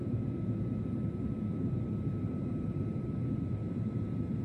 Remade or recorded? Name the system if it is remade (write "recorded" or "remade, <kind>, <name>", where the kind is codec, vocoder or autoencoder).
remade, vocoder, BigVGAN v2